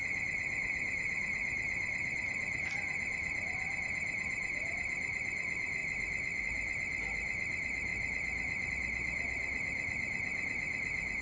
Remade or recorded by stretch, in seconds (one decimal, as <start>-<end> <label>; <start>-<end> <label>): 0.0-11.2 recorded